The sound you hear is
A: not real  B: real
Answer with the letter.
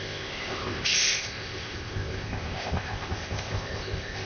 A